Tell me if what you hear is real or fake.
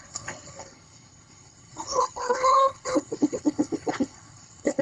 fake